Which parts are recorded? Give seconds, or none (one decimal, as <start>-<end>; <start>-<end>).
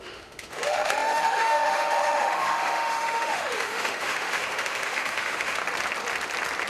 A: 5.6-6.7